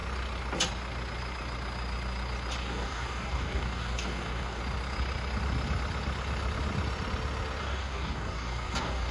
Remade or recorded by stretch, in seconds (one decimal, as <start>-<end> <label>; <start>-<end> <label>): 0.0-2.6 recorded; 2.6-4.6 remade; 4.6-7.6 recorded; 7.6-9.1 remade